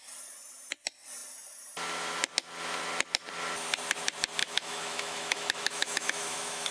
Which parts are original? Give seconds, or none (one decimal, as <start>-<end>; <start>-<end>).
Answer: 0.0-4.4